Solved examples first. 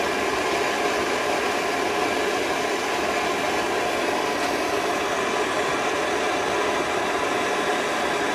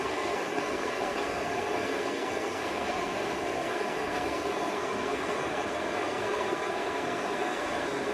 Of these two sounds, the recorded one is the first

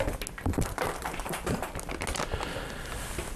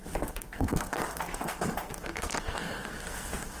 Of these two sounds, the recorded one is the first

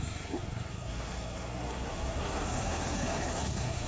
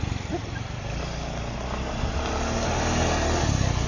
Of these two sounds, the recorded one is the second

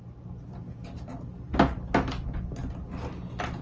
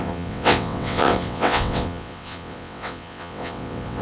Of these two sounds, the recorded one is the first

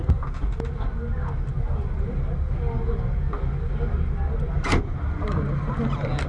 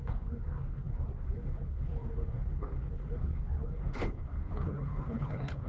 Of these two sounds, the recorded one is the first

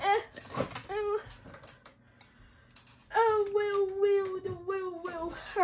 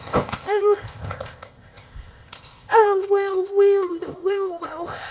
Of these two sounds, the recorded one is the first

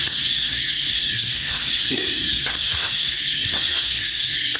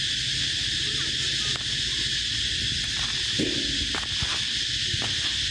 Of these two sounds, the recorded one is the second